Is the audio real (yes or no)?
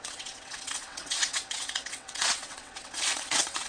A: no